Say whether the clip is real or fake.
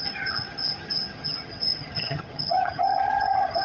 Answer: fake